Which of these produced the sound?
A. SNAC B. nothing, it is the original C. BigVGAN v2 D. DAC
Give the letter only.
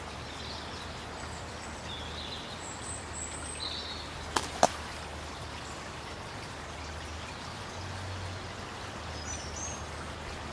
B